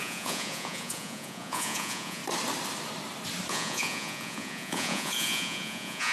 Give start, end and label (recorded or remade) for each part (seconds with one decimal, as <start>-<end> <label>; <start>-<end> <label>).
0.0-2.2 remade; 2.2-3.5 recorded; 3.5-6.1 remade